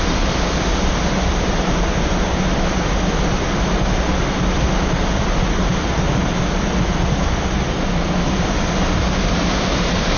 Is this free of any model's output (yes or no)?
yes